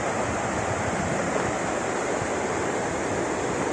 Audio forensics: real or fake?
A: real